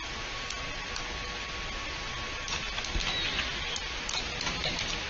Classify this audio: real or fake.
real